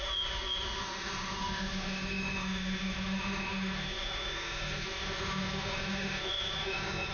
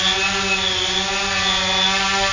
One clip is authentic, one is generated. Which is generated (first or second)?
first